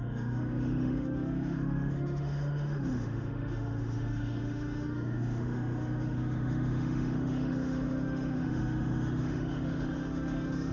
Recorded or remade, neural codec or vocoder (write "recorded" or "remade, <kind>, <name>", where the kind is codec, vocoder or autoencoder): remade, autoencoder, DAC-VAE